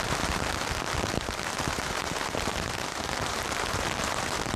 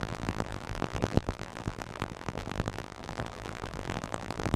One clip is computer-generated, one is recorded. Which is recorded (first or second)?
first